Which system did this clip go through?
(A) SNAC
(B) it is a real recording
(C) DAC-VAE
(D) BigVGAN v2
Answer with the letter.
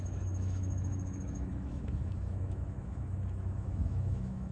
C